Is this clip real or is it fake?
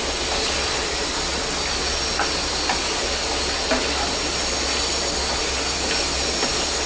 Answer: real